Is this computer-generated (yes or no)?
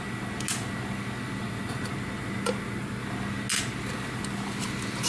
no